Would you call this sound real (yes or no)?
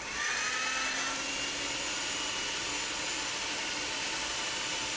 yes